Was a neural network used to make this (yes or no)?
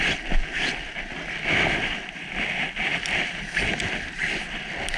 no